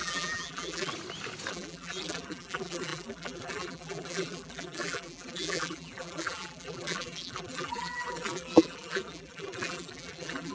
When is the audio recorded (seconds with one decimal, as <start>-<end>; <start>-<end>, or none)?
0.9-1.5